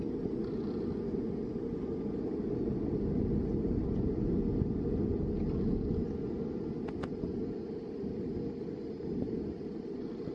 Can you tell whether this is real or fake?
real